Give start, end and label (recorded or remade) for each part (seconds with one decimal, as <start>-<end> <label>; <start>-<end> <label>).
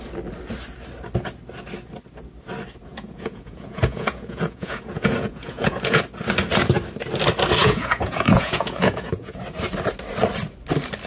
0.0-2.9 recorded; 2.9-6.0 remade; 6.0-7.6 recorded; 7.6-9.4 remade; 9.4-11.1 recorded